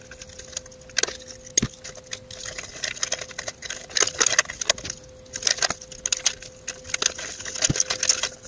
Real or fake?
real